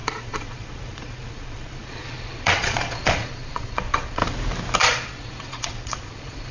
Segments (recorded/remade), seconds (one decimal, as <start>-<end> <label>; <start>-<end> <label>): 0.0-4.2 remade; 4.2-4.8 recorded; 4.8-6.5 remade